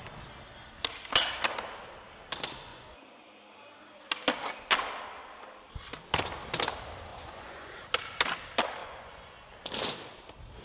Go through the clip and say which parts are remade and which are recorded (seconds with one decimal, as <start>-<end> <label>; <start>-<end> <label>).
0.0-2.7 recorded; 2.7-3.3 remade; 3.3-7.1 recorded; 7.1-7.7 remade; 7.7-8.8 recorded; 8.8-9.5 remade; 9.5-10.6 recorded